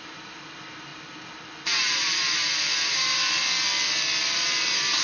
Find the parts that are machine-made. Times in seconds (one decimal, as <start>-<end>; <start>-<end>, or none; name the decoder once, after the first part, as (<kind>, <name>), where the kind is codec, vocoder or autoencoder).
0.0-0.9 (vocoder, BigVGAN v2); 1.6-3.4; 4.2-5.0